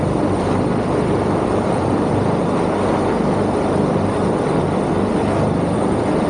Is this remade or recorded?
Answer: remade